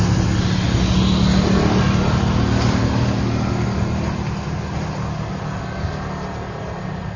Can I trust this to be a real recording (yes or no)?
yes